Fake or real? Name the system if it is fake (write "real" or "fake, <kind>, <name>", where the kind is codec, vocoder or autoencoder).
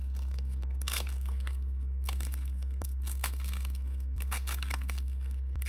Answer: fake, codec, SNAC